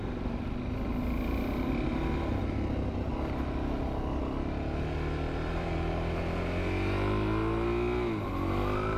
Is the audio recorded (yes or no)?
yes